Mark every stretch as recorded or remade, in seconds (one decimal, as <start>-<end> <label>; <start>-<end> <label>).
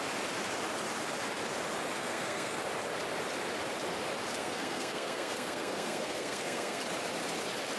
0.0-1.9 recorded; 1.9-2.6 remade; 2.6-4.4 recorded; 4.4-6.8 remade; 6.8-7.8 recorded